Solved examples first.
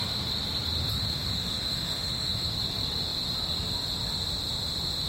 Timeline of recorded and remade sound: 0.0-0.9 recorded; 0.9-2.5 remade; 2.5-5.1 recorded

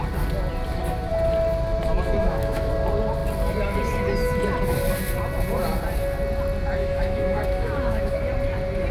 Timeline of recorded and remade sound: 0.0-2.2 recorded; 2.2-2.7 remade; 2.7-6.8 recorded; 6.8-8.1 remade; 8.1-8.9 recorded

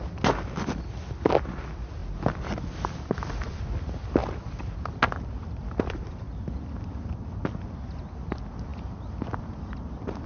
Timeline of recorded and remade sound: 0.0-10.3 recorded

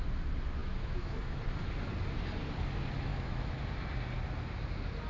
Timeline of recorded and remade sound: 0.0-0.6 recorded; 0.6-1.4 remade; 1.4-3.1 recorded; 3.1-3.6 remade; 3.6-5.1 recorded

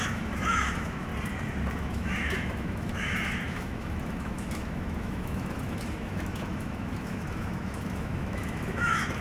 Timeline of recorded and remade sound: 0.0-1.1 remade; 1.1-1.7 recorded; 1.7-9.2 remade

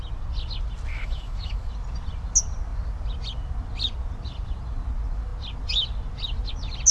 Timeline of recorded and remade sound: 0.0-0.9 recorded; 0.9-1.7 remade; 1.7-6.9 recorded

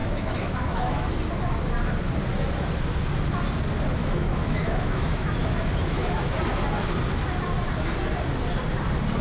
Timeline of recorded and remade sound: 0.0-1.1 remade; 1.1-4.0 recorded; 4.0-6.3 remade; 6.3-9.2 recorded

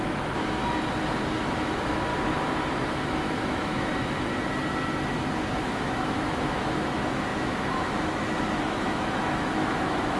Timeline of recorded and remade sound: 0.0-0.6 remade; 0.6-1.4 recorded; 1.4-2.1 remade; 2.1-2.9 recorded; 2.9-3.9 remade; 3.9-5.6 recorded; 5.6-10.2 remade